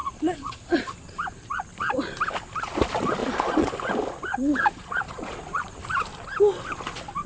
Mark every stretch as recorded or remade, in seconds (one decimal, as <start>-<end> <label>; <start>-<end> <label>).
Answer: 0.0-0.9 remade; 0.9-3.2 recorded; 3.2-3.7 remade; 3.7-4.3 recorded; 4.3-5.6 remade; 5.6-7.3 recorded